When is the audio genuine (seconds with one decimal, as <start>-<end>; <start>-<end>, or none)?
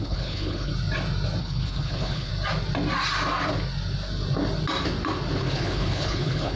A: 0.7-1.4; 2.3-5.4